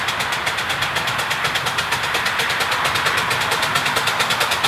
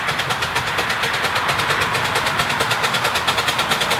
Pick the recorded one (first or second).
second